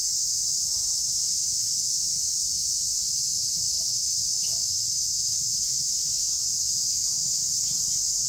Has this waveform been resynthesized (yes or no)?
yes